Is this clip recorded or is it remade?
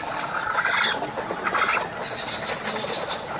recorded